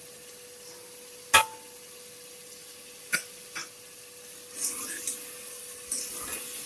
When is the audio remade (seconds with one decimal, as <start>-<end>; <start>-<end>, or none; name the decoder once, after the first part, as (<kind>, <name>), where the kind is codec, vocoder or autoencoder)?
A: none